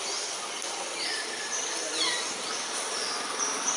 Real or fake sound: real